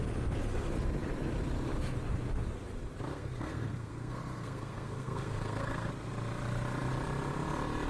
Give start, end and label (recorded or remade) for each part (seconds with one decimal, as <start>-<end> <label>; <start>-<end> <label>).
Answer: 0.0-3.1 recorded; 3.1-5.9 remade; 5.9-7.9 recorded